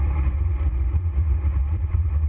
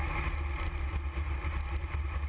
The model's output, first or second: first